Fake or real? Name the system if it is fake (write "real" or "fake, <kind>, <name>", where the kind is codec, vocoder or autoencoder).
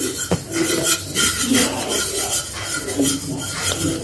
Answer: real